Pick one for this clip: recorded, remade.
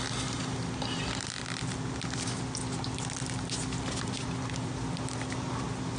recorded